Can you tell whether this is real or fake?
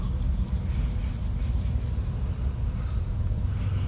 real